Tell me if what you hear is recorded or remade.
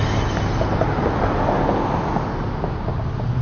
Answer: recorded